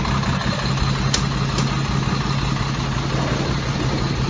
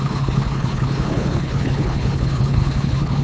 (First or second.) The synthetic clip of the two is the second